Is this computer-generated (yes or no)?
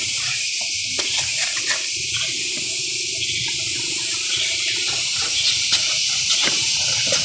yes